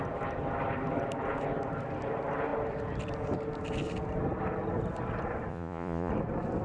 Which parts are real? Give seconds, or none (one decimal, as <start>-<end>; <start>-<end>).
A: 0.0-5.5; 6.1-6.6